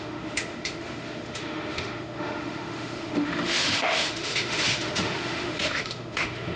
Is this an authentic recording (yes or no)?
no